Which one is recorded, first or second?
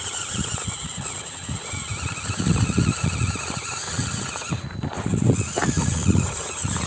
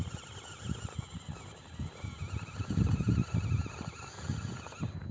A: second